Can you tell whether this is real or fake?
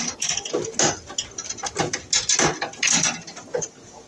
real